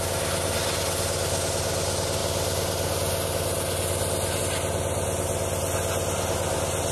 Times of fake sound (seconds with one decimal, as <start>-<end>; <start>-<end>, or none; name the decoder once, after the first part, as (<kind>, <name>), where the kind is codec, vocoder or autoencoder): none